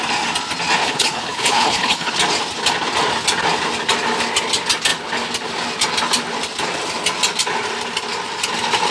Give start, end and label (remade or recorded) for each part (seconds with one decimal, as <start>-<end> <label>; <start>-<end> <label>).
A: 0.0-0.8 recorded; 0.8-2.1 remade; 2.1-8.9 recorded